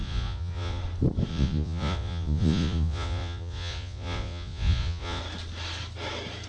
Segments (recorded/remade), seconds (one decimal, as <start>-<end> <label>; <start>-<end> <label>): 0.0-0.8 remade; 0.8-1.3 recorded; 1.3-5.2 remade; 5.2-6.5 recorded